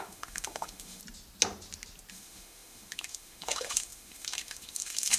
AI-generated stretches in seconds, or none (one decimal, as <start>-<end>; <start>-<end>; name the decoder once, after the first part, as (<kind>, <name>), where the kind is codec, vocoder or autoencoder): 0.0-1.0 (autoencoder, DAC-VAE); 2.1-5.2